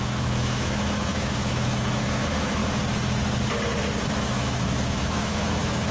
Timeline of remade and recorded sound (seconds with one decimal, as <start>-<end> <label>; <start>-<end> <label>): 0.0-2.6 remade; 2.6-4.2 recorded; 4.2-5.9 remade